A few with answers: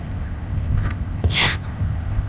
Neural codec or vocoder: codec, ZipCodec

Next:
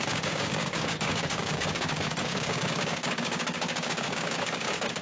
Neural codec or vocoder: codec, DAC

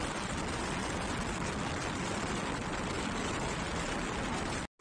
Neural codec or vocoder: none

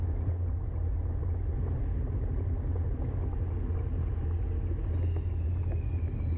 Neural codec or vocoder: none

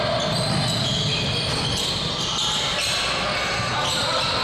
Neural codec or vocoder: none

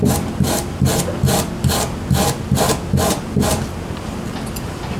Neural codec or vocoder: none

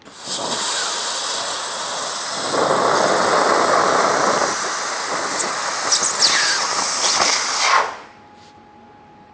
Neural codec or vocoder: none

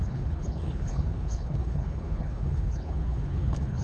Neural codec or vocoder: codec, HILCodec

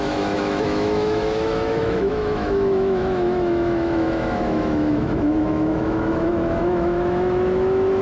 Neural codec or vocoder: autoencoder, DAC-VAE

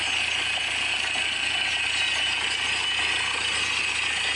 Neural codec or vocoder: none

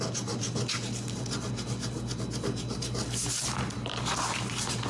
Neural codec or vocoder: none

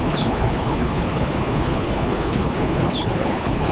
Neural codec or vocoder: codec, HILCodec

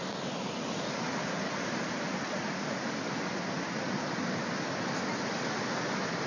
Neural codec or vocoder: none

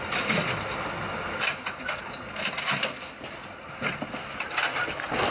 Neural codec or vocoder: none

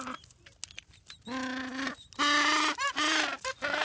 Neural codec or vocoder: none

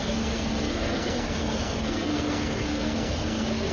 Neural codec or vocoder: codec, SNAC